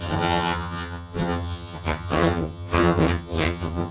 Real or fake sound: fake